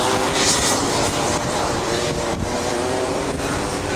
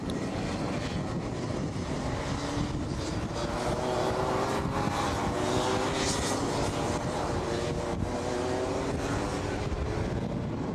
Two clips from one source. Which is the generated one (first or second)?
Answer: first